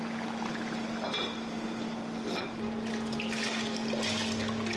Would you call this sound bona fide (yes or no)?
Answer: yes